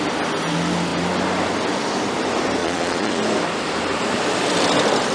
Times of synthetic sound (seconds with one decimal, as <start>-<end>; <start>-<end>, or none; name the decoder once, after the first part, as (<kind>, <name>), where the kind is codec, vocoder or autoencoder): 2.6-3.2 (vocoder, Vocos)